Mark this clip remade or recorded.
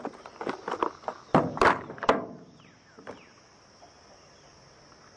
recorded